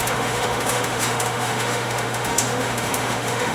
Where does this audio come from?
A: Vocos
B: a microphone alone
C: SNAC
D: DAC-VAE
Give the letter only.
D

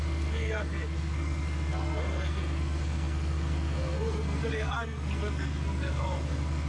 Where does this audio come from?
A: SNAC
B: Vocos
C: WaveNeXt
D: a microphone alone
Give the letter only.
A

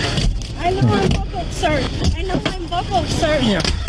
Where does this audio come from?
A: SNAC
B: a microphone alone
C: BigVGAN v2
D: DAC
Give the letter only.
B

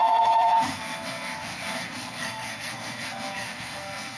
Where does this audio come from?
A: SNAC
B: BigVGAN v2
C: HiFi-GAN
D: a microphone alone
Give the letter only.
A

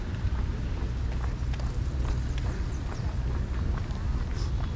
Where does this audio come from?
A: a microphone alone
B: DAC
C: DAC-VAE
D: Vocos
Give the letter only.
A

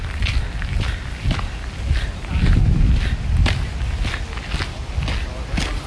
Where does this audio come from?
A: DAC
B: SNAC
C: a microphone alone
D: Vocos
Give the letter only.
C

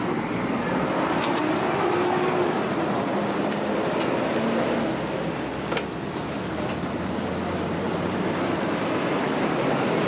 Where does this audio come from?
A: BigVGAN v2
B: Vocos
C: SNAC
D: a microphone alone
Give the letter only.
D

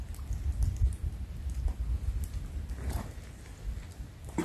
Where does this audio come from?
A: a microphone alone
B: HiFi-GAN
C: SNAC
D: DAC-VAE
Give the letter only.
A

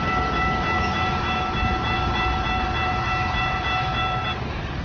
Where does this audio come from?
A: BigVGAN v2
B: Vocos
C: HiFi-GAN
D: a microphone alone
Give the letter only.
A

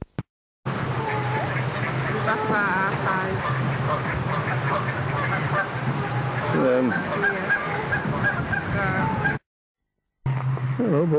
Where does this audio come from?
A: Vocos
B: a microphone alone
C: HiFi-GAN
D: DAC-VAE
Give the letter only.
B